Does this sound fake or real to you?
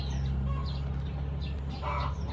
real